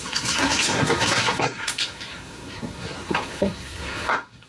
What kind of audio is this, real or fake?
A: fake